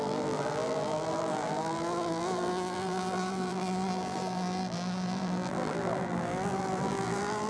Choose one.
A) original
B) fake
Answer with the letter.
B